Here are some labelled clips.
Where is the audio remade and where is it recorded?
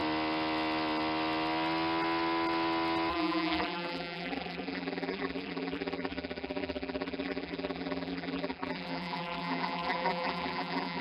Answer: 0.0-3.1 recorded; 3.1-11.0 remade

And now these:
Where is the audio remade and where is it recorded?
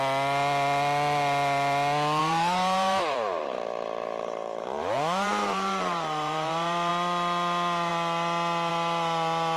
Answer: 0.0-2.2 recorded; 2.2-6.9 remade; 6.9-9.6 recorded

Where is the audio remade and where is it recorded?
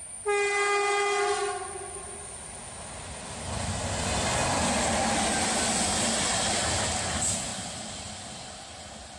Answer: 0.0-7.5 recorded; 7.5-9.2 remade